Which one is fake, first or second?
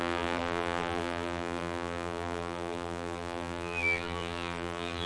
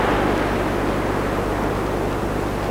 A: first